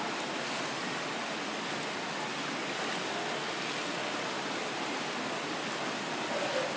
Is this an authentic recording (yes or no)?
yes